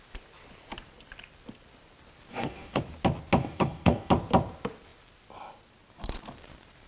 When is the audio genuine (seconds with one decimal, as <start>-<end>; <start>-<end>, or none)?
0.0-2.3; 2.8-3.4; 4.1-6.9